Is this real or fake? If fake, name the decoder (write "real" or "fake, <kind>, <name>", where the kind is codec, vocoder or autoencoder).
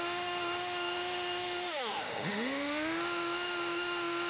fake, autoencoder, DAC-VAE